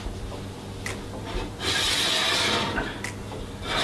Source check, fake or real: real